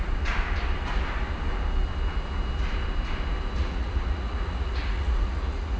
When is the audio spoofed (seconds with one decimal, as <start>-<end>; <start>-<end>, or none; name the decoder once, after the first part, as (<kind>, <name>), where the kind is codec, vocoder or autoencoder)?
3.6-5.8 (vocoder, Vocos)